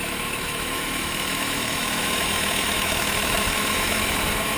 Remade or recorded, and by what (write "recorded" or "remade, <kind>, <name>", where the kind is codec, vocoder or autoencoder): remade, autoencoder, DAC-VAE